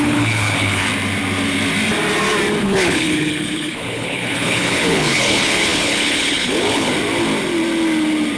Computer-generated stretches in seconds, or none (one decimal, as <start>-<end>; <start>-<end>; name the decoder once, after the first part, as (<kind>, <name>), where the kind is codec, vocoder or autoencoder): 0.0-0.9 (codec, HILCodec); 2.6-6.9

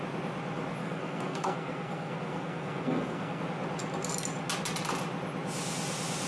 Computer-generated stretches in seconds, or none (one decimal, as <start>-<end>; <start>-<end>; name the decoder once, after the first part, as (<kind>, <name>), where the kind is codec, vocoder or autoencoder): 0.8-3.4 (codec, SNAC)

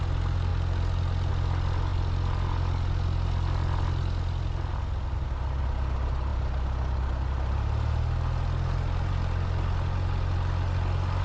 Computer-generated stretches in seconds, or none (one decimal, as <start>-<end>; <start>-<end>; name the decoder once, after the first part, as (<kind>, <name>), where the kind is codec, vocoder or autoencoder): none

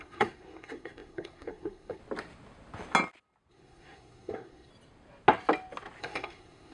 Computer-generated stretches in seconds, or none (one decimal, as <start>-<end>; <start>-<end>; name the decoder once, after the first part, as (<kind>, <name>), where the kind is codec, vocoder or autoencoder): 0.0-2.0 (codec, SNAC); 3.5-4.7; 6.0-6.7

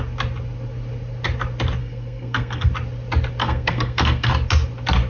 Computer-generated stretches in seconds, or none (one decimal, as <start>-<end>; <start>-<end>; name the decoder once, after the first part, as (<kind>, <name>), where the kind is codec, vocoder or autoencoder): 1.8-2.7 (codec, SNAC); 3.4-4.3